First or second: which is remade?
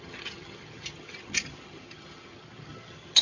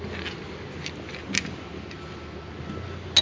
first